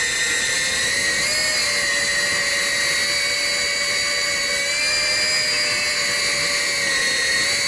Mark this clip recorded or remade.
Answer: recorded